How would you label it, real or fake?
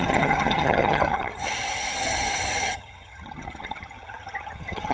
fake